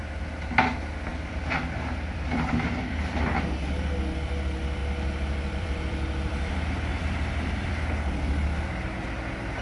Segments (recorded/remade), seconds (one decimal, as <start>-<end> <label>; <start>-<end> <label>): 0.0-1.1 recorded; 1.1-3.3 remade; 3.3-4.8 recorded; 4.8-6.5 remade; 6.5-6.9 recorded; 6.9-7.7 remade; 7.7-9.6 recorded